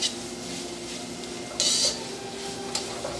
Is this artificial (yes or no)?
no